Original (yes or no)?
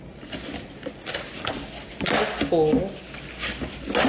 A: yes